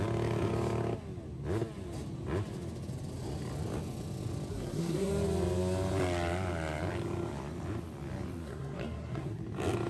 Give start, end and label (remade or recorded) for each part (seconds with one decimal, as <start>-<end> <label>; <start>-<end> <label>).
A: 0.0-4.5 recorded; 4.5-5.1 remade; 5.1-8.4 recorded; 8.4-9.4 remade; 9.4-9.9 recorded